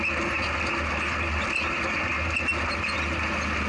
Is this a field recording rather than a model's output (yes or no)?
yes